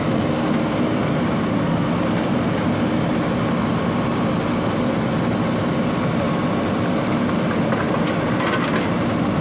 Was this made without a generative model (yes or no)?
yes